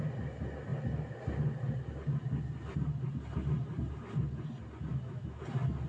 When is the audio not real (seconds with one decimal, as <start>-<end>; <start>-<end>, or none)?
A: 4.9-5.4